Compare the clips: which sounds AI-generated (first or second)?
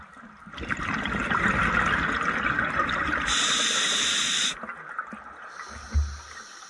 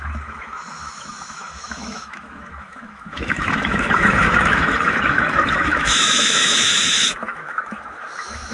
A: second